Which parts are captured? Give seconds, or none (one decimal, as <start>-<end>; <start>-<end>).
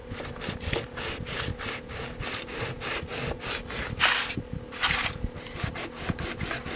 0.0-6.8